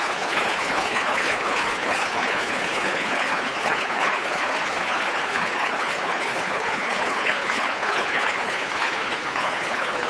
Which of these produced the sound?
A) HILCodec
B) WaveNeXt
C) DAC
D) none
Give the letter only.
A